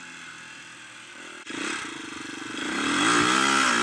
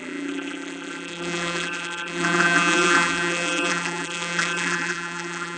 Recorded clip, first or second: first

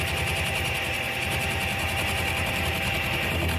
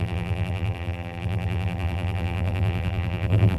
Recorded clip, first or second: first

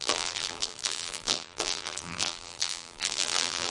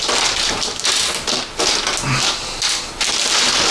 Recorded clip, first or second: second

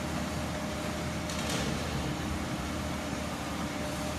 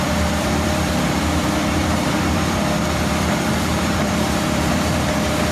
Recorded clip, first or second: first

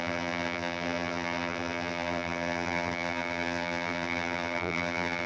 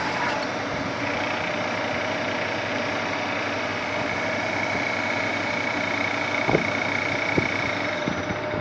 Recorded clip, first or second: second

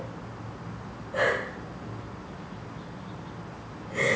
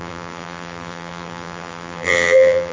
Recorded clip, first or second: first